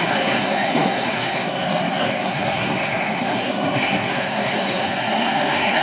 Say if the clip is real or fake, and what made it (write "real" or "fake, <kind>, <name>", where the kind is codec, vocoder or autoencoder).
fake, codec, SNAC